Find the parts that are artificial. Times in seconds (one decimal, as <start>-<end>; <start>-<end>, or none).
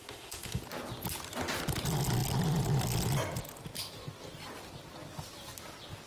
0.0-0.6